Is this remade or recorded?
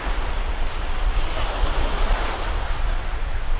recorded